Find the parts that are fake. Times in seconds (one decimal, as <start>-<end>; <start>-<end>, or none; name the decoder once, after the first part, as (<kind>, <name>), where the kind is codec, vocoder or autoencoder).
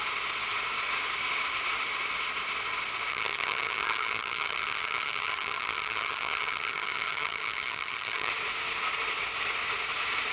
3.1-8.3 (vocoder, HiFi-GAN)